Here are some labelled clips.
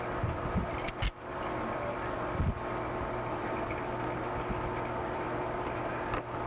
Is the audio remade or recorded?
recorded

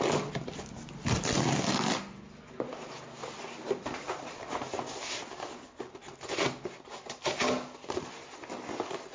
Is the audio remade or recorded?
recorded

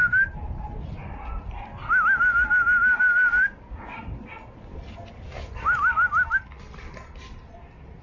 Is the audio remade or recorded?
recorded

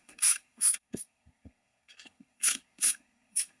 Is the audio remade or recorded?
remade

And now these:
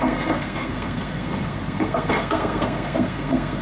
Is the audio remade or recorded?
remade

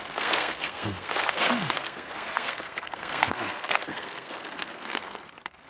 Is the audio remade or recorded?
remade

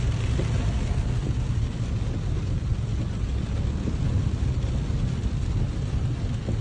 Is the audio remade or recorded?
recorded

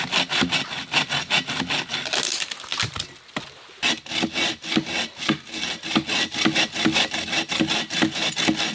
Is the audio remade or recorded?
recorded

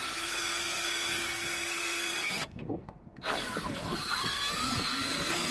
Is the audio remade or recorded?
remade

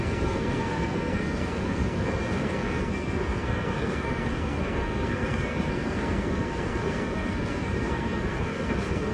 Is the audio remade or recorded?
remade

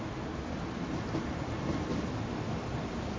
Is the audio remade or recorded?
recorded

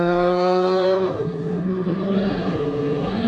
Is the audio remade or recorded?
remade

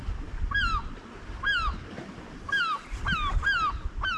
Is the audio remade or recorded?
recorded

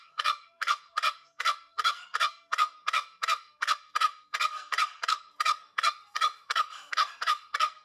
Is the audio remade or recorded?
remade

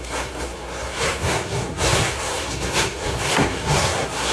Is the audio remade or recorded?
remade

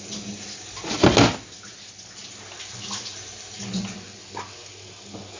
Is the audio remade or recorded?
recorded